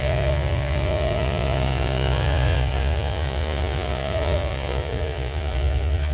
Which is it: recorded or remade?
remade